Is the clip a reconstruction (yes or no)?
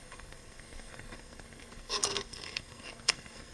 yes